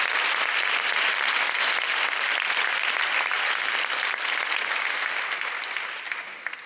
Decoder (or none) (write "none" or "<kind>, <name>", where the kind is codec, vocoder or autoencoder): none